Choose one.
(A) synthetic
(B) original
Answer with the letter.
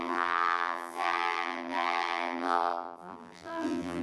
A